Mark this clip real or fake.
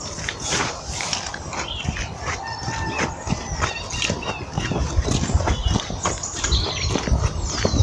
real